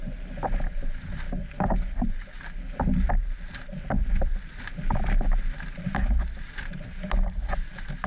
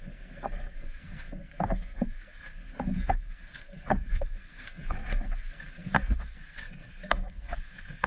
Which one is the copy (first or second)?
second